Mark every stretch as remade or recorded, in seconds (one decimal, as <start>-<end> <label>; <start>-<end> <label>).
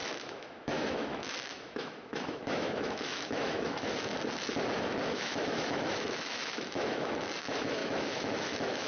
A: 0.0-4.1 remade; 4.1-5.1 recorded; 5.1-8.9 remade